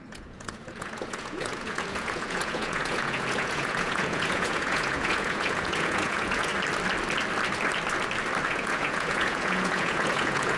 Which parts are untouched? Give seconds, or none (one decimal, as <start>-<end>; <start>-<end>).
6.5-8.5